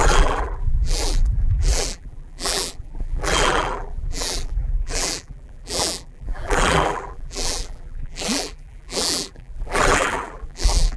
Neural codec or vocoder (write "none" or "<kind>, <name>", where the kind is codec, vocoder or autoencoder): vocoder, BigVGAN v2